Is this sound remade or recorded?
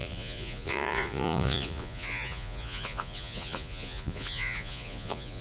remade